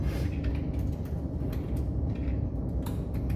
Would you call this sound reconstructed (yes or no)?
no